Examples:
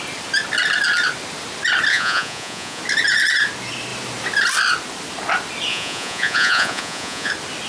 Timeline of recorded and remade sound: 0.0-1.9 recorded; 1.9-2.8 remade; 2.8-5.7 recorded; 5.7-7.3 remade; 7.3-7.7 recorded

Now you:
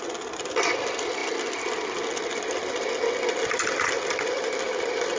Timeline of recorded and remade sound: 0.0-1.2 remade; 1.2-4.3 recorded; 4.3-5.2 remade

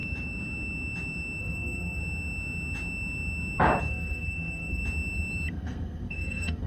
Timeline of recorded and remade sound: 0.0-1.4 recorded; 1.4-2.0 remade; 2.0-3.8 recorded; 3.8-4.8 remade; 4.8-5.5 recorded; 5.5-6.7 remade

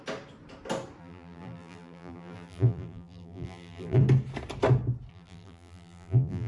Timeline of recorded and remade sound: 0.0-1.0 recorded; 1.0-4.0 remade; 4.0-5.1 recorded; 5.1-6.5 remade

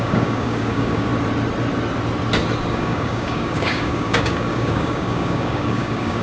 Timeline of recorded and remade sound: 0.0-1.1 remade; 1.1-2.7 recorded; 2.7-6.2 remade